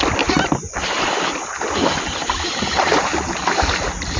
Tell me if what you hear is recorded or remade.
recorded